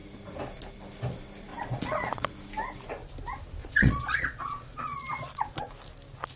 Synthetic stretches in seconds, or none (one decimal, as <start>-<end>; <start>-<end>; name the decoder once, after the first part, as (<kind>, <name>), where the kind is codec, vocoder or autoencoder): 1.5-2.3 (vocoder, Vocos); 3.6-5.7